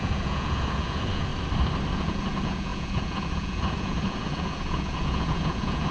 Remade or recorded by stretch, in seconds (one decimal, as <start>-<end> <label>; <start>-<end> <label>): 0.0-1.3 remade; 1.3-1.9 recorded; 1.9-5.9 remade